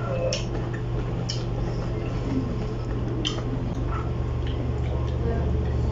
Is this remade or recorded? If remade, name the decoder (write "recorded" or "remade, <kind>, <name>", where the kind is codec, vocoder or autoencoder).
recorded